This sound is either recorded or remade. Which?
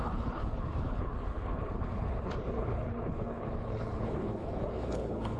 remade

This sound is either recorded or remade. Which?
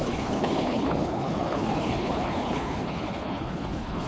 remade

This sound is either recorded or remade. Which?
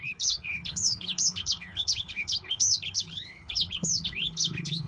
remade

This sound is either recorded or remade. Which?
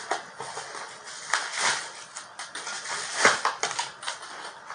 recorded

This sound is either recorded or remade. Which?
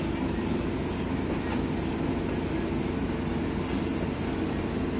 recorded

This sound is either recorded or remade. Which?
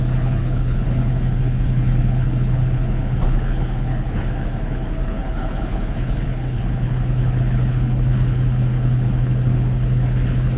remade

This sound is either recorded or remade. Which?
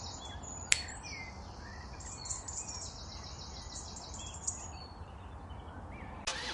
recorded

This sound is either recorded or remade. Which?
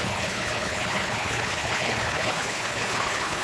remade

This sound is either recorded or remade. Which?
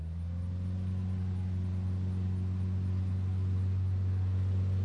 recorded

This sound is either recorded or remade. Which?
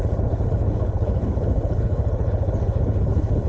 remade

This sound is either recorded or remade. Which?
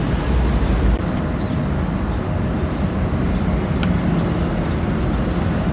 recorded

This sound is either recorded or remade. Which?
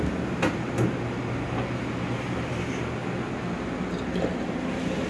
recorded